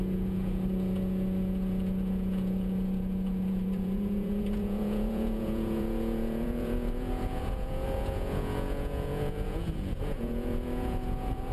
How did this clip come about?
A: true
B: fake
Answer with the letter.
B